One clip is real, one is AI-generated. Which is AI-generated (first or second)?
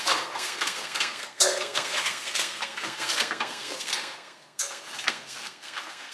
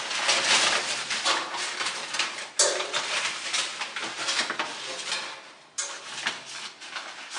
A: first